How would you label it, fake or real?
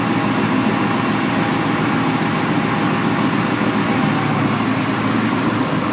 real